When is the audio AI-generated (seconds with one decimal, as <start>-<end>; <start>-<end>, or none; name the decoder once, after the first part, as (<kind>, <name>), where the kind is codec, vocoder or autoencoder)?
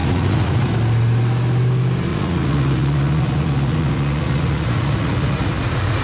0.0-0.7 (vocoder, Vocos); 2.1-6.0